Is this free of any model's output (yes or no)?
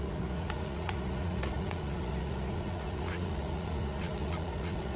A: no